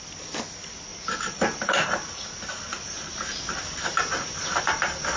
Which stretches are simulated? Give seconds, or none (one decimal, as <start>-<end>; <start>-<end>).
0.9-2.2; 2.7-3.4; 3.9-4.8